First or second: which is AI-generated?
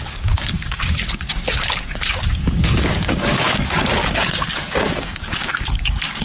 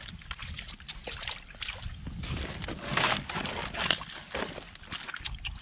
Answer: first